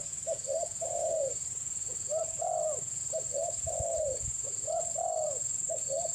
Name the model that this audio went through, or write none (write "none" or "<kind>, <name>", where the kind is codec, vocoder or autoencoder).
vocoder, Vocos